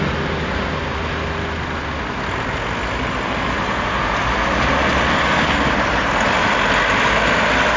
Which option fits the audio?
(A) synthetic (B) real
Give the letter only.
B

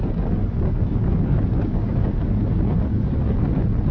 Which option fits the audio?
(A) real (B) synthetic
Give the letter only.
A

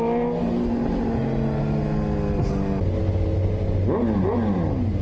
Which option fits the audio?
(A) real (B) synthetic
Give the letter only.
A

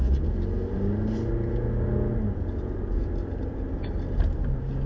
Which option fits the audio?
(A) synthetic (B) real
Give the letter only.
B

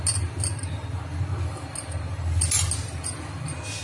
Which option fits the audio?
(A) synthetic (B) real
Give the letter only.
B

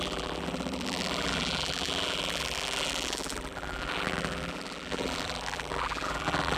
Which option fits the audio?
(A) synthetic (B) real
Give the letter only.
A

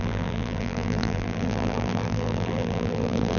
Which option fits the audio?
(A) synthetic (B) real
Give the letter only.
A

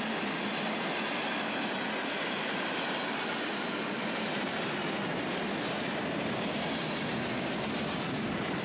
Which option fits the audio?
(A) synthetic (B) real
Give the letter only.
B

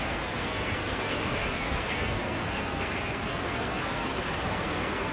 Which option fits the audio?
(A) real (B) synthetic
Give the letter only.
B